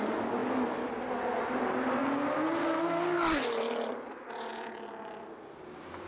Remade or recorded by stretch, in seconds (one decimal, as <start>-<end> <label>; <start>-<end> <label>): 0.0-6.1 recorded